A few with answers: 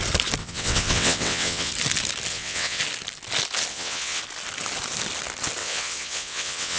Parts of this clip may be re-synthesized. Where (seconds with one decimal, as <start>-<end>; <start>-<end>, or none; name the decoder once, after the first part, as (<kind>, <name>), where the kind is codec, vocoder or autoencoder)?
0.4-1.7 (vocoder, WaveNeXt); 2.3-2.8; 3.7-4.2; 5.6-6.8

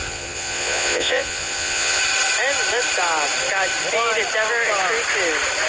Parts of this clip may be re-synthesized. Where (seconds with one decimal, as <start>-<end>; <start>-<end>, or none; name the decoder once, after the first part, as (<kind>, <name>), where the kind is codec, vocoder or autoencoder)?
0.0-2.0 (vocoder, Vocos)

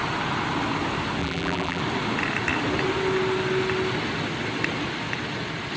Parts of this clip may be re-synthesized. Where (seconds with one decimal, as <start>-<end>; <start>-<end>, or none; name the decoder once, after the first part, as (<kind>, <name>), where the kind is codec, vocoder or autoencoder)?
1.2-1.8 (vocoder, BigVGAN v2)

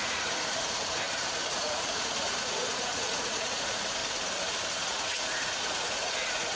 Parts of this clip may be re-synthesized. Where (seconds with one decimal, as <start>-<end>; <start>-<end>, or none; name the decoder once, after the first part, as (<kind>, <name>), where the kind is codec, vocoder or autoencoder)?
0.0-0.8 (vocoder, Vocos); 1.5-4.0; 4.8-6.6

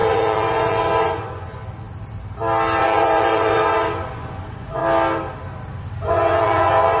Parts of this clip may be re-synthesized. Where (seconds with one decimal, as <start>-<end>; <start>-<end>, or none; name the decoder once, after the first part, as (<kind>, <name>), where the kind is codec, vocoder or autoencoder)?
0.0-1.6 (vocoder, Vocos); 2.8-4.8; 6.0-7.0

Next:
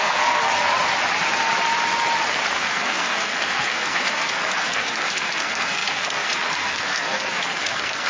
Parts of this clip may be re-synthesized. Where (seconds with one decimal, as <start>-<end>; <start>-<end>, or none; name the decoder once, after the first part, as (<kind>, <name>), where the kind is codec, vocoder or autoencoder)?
0.0-0.5 (codec, SNAC); 2.5-8.1